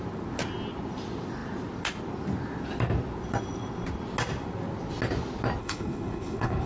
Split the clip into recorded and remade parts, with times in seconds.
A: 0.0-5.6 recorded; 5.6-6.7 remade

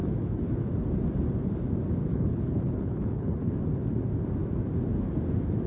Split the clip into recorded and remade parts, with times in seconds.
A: 0.0-0.7 remade; 0.7-2.1 recorded; 2.1-3.5 remade; 3.5-5.7 recorded

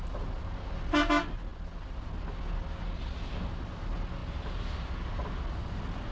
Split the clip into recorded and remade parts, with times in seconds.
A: 0.0-6.1 recorded